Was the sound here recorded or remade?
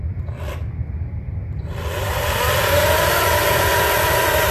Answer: recorded